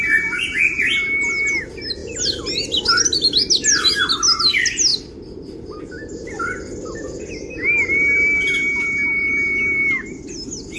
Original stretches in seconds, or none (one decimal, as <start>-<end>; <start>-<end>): 0.0-10.8